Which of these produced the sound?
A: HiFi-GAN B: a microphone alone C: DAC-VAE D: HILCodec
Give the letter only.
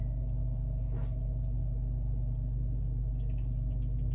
B